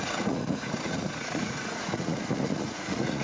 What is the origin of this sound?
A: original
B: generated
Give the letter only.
B